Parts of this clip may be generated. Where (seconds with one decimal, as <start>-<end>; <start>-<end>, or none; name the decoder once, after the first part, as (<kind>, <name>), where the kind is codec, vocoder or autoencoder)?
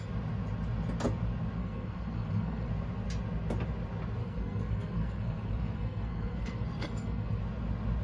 1.6-2.7 (codec, SNAC); 4.2-7.4